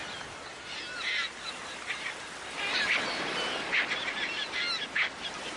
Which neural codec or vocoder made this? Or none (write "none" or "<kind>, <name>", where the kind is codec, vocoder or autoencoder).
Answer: vocoder, BigVGAN v2